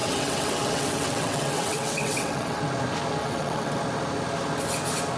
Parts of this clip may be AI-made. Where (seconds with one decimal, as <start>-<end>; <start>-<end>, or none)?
0.0-2.6; 3.2-3.8